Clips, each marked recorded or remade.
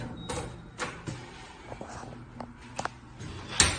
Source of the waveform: recorded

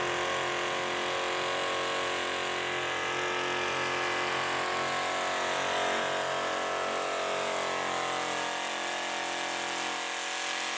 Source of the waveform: recorded